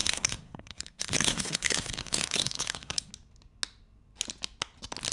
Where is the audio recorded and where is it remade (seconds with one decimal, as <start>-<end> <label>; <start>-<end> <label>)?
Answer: 0.0-3.1 remade; 3.1-5.1 recorded